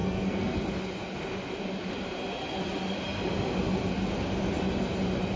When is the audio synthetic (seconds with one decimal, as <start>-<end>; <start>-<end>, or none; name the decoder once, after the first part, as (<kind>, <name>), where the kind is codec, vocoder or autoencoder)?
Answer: 0.0-0.6 (codec, SNAC)